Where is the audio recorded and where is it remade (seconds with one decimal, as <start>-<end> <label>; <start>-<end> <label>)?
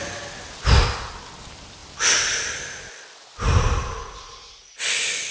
0.0-5.3 recorded